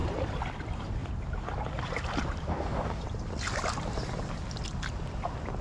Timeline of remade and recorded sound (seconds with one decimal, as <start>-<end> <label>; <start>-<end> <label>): 0.0-2.5 recorded; 2.5-3.0 remade; 3.0-5.6 recorded